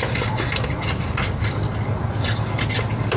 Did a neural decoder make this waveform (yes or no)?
no